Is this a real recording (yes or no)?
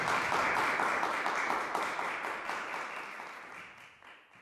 yes